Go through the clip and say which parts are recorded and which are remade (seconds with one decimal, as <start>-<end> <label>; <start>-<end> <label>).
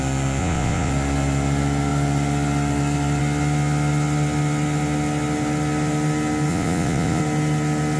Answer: 0.0-0.4 recorded; 0.4-0.9 remade; 0.9-6.5 recorded; 6.5-7.2 remade; 7.2-8.0 recorded